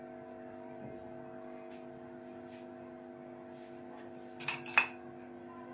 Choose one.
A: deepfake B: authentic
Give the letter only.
B